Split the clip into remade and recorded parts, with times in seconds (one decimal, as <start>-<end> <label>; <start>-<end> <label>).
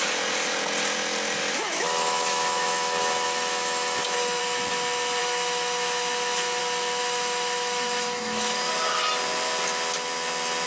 0.0-1.4 recorded; 1.4-4.4 remade; 4.4-5.2 recorded; 5.2-6.6 remade; 6.6-7.0 recorded; 7.0-8.7 remade; 8.7-10.7 recorded